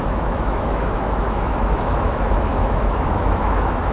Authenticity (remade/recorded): remade